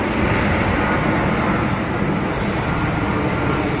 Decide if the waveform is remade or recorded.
remade